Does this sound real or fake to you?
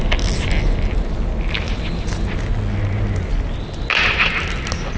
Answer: real